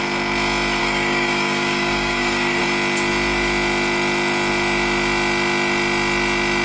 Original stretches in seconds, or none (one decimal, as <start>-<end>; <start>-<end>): 0.0-0.8; 2.6-6.6